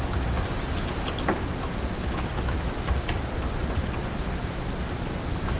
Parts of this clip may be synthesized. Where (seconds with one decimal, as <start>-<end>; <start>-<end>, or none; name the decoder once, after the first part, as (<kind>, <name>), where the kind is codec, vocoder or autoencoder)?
2.0-2.7 (autoencoder, DAC-VAE)